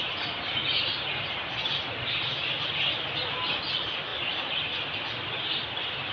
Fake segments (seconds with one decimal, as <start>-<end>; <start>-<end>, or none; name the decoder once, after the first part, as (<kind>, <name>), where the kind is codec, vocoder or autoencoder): none